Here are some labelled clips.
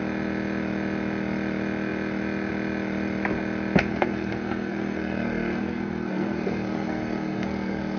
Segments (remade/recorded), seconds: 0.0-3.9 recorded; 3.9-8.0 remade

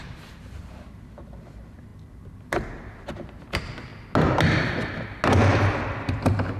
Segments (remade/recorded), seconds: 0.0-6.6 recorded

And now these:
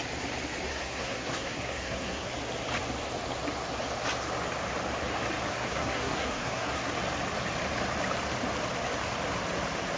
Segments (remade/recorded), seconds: 0.0-0.7 recorded; 0.7-2.3 remade; 2.3-5.5 recorded; 5.5-6.9 remade; 6.9-10.0 recorded

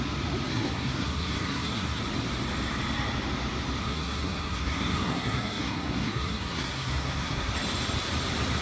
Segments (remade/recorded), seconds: 0.0-0.5 recorded; 0.5-2.0 remade; 2.0-3.8 recorded; 3.8-7.5 remade; 7.5-8.6 recorded